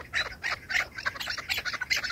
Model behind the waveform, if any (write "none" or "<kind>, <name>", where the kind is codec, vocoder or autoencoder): none